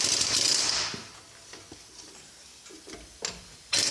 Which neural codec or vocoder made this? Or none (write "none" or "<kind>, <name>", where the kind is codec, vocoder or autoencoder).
none